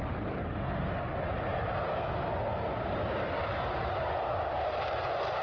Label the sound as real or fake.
real